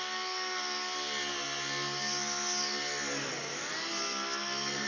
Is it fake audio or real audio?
real